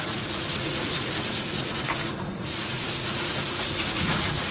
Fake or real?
fake